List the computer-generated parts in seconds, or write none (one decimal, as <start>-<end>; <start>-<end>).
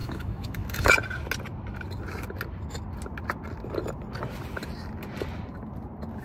0.0-0.9